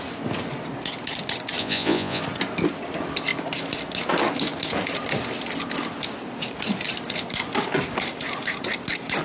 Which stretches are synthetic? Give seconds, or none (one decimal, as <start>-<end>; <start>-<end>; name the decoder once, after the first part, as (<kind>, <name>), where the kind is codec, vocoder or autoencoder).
1.6-2.2 (vocoder, Vocos)